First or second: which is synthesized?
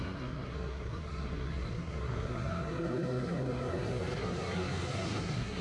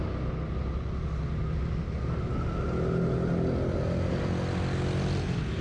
first